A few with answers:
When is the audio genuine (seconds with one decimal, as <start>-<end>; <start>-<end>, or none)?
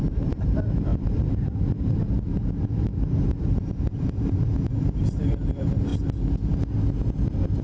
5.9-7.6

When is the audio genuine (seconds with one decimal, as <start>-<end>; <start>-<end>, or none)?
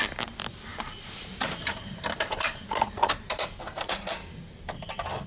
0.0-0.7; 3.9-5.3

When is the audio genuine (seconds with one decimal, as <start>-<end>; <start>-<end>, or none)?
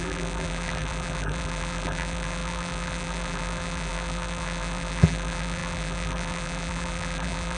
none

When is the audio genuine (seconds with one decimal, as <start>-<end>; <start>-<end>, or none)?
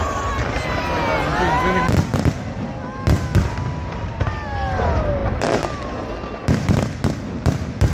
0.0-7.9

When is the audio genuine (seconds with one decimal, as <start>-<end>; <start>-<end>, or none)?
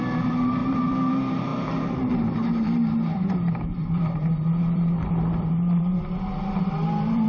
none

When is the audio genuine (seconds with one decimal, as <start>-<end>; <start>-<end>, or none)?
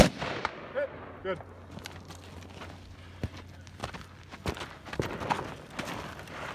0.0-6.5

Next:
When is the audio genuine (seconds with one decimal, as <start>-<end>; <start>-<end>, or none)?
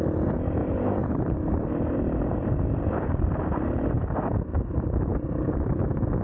0.0-0.6; 4.3-5.1; 5.8-6.2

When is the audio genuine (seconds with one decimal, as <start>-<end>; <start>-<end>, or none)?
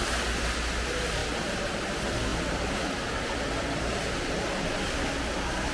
0.0-1.2; 1.8-5.7